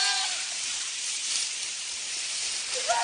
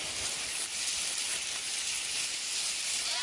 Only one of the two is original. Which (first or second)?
second